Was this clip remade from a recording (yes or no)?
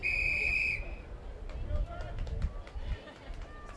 no